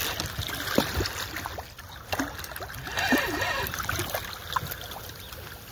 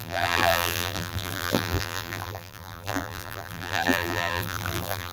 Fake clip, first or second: second